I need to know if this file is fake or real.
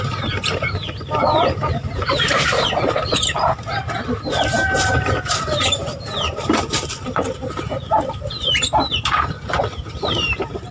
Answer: fake